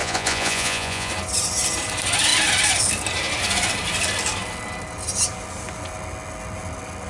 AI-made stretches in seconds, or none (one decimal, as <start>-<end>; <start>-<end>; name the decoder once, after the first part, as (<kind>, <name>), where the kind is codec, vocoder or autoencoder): 0.0-1.1 (vocoder, Vocos)